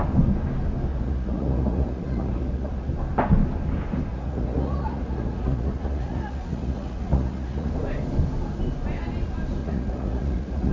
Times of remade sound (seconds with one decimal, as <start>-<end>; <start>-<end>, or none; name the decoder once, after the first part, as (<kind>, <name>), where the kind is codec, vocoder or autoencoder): 0.9-2.9 (vocoder, Vocos); 4.1-7.7; 9.6-10.7